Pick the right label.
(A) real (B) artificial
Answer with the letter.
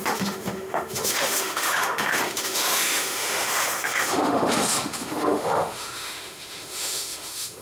B